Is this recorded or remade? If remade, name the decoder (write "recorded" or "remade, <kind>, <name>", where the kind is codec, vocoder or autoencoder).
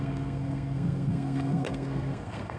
remade, codec, SNAC